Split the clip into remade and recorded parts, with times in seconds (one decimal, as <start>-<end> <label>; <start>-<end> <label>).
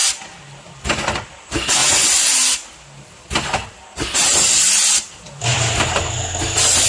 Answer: 0.0-6.9 recorded